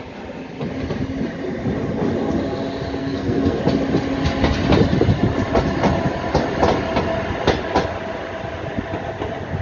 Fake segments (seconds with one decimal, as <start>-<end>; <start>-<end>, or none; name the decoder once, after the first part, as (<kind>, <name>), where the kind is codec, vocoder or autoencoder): 3.0-3.6 (codec, SNAC)